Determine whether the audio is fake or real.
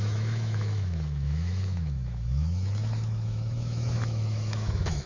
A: fake